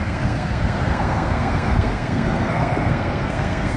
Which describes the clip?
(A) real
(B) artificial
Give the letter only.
B